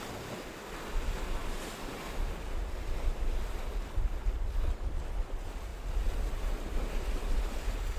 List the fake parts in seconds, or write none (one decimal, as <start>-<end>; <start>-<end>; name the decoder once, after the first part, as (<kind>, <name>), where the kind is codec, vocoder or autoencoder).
none